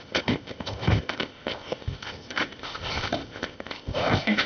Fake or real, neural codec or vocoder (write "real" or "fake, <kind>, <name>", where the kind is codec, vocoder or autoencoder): fake, codec, ZipCodec